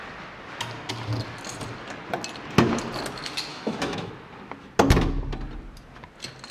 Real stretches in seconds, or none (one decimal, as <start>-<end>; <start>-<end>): 0.0-3.5; 4.1-6.5